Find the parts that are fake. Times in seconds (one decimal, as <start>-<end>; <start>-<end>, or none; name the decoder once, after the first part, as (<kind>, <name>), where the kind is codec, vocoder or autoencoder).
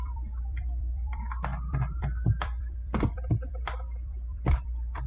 0.0-5.1 (vocoder, BigVGAN v2)